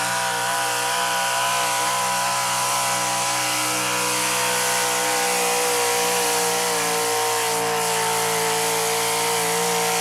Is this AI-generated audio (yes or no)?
no